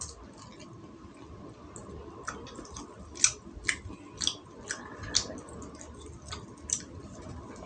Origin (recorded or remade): recorded